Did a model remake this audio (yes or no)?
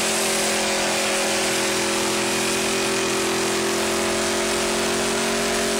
no